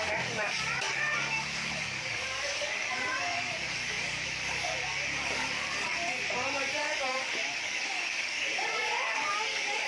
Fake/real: fake